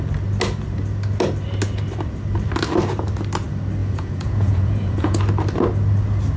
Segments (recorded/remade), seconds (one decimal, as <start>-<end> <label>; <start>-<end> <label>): 0.0-3.8 recorded; 3.8-5.2 remade; 5.2-6.4 recorded